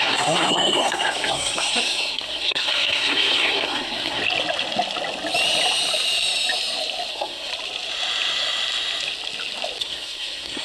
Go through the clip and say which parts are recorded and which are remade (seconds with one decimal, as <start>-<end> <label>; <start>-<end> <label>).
0.0-4.2 remade; 4.2-7.1 recorded; 7.1-7.5 remade; 7.5-9.8 recorded; 9.8-10.6 remade